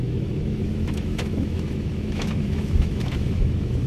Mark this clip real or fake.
fake